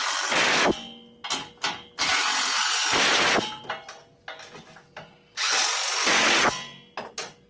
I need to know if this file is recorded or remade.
recorded